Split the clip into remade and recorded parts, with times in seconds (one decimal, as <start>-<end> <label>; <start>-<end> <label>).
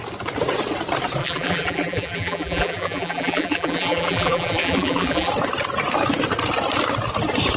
0.0-1.2 recorded; 1.2-5.3 remade; 5.3-7.6 recorded